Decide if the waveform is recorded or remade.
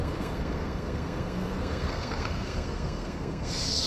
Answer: remade